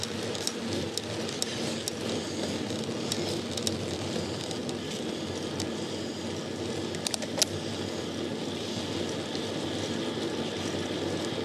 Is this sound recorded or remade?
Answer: recorded